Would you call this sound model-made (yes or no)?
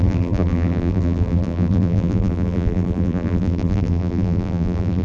yes